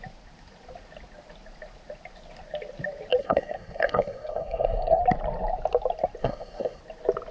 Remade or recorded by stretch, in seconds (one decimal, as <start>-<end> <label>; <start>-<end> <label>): 0.0-3.2 recorded; 3.2-5.0 remade; 5.0-6.2 recorded; 6.2-6.8 remade; 6.8-7.3 recorded

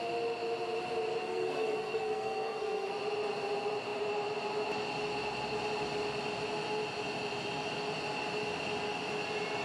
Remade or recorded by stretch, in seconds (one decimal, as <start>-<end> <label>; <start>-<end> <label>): 0.0-1.2 recorded; 1.2-2.9 remade; 2.9-9.6 recorded

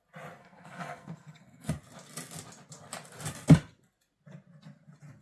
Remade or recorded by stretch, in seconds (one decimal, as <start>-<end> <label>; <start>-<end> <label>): 0.0-0.4 recorded; 0.4-1.7 remade; 1.7-5.2 recorded

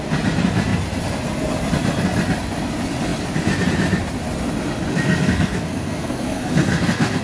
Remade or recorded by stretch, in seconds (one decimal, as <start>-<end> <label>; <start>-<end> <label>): 0.0-4.9 recorded; 4.9-7.2 remade

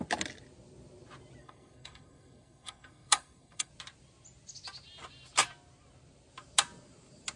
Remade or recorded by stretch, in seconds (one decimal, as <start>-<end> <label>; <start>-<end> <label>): 0.0-1.4 recorded; 1.4-3.7 remade; 3.7-7.4 recorded

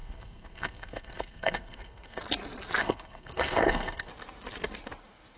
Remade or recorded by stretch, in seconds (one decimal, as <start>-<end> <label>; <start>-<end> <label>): 0.0-2.2 remade; 2.2-2.8 recorded; 2.8-4.1 remade; 4.1-5.4 recorded